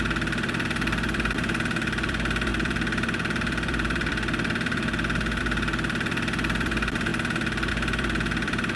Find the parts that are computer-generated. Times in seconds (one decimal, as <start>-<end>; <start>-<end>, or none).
0.0-7.1; 7.7-8.8